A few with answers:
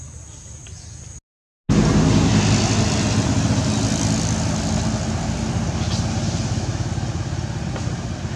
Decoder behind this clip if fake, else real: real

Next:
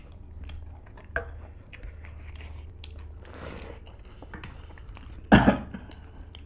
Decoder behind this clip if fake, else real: real